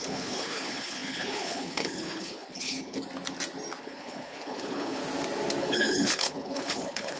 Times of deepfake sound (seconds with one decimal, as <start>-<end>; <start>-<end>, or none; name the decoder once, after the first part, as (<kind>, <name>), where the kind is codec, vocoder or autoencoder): 0.0-3.0 (codec, HILCodec); 3.8-5.0; 5.6-7.2